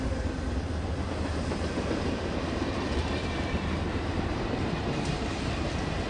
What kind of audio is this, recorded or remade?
remade